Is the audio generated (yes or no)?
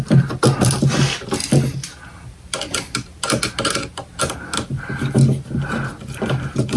no